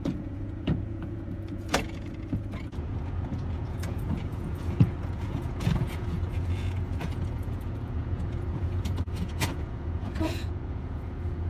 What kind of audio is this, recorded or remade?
remade